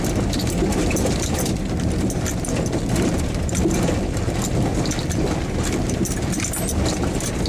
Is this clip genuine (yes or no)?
yes